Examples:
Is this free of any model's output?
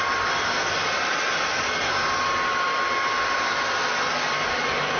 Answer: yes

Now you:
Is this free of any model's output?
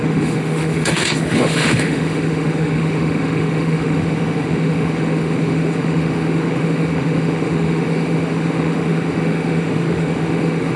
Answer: no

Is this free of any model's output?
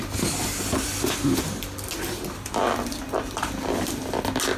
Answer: yes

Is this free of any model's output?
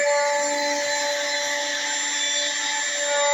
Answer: yes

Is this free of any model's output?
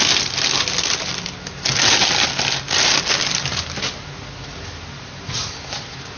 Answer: yes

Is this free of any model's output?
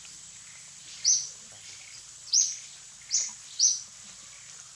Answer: yes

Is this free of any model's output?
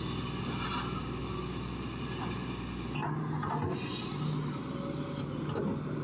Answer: yes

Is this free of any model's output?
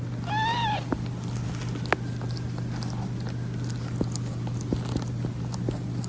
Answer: yes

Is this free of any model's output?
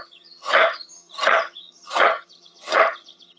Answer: no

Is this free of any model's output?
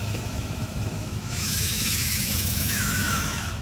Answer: no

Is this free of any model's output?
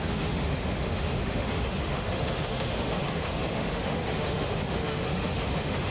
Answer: no